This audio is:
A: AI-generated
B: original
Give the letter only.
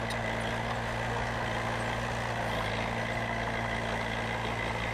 B